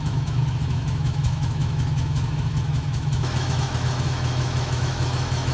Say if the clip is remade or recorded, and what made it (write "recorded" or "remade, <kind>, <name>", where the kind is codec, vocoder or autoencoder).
remade, autoencoder, DAC-VAE